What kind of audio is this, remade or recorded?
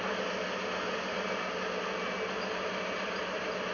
recorded